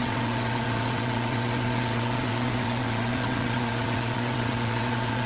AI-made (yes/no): yes